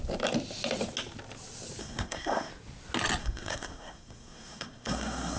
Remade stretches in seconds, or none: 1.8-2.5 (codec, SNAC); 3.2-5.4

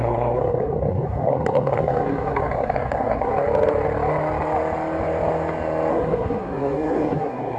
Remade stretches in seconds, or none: 0.0-3.3 (codec, SNAC); 5.9-7.6